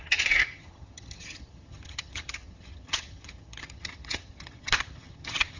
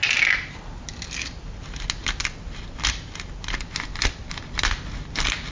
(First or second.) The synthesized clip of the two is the first